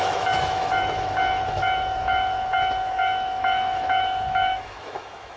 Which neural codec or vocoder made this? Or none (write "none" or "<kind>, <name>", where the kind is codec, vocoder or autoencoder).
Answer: autoencoder, DAC-VAE